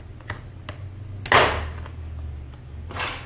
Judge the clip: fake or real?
real